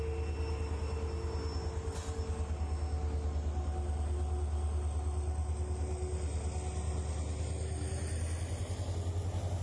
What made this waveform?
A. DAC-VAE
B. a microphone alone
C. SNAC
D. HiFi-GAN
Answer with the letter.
B